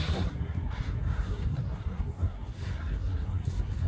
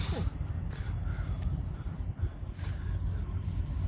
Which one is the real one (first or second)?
second